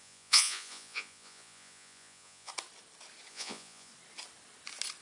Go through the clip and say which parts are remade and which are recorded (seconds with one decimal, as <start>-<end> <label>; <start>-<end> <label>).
0.0-2.5 remade; 2.5-3.3 recorded; 3.3-3.9 remade; 3.9-5.0 recorded